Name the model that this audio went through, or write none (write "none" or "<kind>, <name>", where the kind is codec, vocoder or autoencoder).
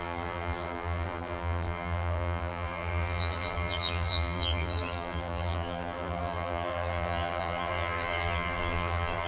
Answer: vocoder, BigVGAN v2